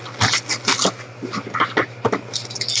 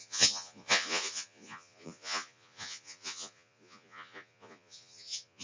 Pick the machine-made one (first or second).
second